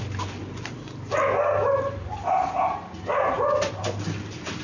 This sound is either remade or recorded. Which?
recorded